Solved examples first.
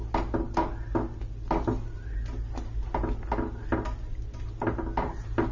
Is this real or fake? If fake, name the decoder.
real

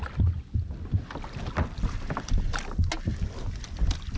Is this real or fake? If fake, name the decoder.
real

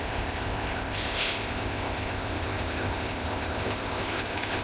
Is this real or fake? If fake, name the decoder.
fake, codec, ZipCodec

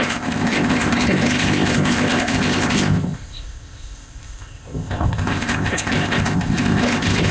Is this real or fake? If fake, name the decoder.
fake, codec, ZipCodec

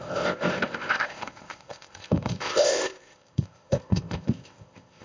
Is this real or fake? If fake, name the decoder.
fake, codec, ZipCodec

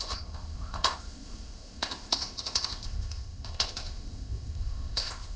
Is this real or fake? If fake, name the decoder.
fake, codec, ZipCodec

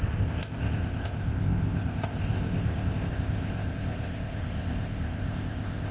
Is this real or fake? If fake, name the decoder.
fake, codec, ZipCodec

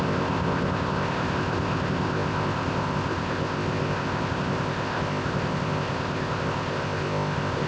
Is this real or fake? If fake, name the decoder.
fake, codec, ZipCodec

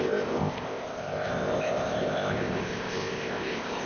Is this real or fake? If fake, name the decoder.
fake, codec, ZipCodec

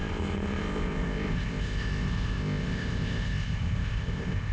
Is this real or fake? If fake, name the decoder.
fake, codec, ZipCodec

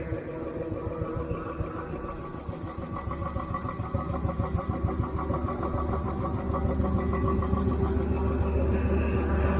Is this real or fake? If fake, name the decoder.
real